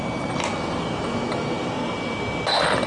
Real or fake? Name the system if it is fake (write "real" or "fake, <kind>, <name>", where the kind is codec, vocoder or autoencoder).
real